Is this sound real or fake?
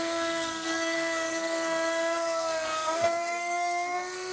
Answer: fake